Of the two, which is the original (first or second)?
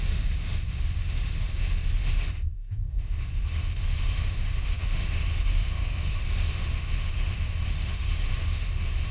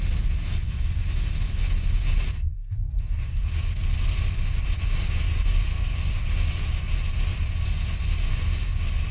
second